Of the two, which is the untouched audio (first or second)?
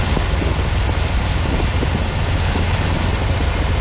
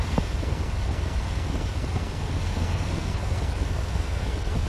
first